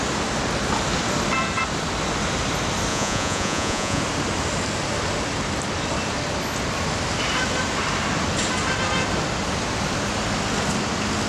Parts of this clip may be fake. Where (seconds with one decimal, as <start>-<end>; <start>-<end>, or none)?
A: 2.9-4.0